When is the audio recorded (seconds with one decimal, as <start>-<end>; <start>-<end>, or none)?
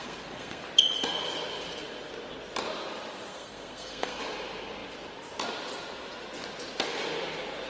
0.6-3.3; 4.2-7.7